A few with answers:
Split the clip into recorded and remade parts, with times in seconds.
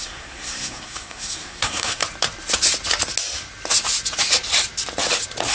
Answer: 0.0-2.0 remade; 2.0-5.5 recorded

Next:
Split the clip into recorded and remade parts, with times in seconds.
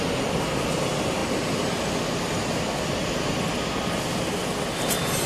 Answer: 0.0-5.3 recorded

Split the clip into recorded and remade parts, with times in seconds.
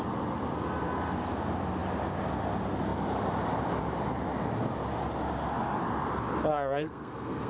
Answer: 0.0-6.5 recorded; 6.5-7.5 remade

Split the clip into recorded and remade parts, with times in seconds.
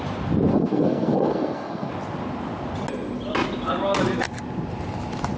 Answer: 0.0-0.5 recorded; 0.5-1.9 remade; 1.9-5.4 recorded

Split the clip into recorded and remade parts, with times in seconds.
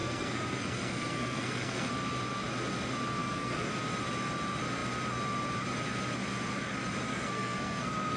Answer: 0.0-1.9 remade; 1.9-3.2 recorded; 3.2-3.7 remade; 3.7-7.1 recorded; 7.1-8.2 remade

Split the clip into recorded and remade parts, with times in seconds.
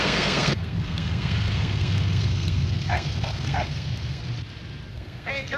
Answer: 0.0-4.2 remade; 4.2-4.9 recorded; 4.9-5.6 remade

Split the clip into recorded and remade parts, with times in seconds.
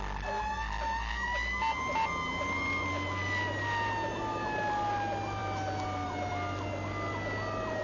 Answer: 0.0-7.8 recorded